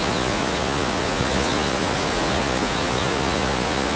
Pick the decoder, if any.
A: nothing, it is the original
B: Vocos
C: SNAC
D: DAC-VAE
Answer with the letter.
B